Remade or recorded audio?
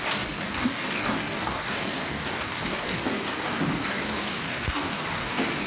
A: remade